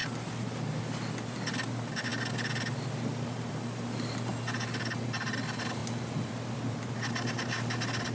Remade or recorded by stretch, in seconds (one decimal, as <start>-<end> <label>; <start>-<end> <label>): 0.0-8.1 recorded